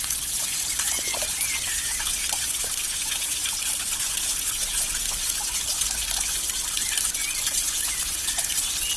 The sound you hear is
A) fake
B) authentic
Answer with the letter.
A